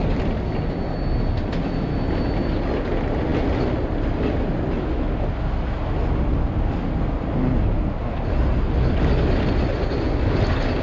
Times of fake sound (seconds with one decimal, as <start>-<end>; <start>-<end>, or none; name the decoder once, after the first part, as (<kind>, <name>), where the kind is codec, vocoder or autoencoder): none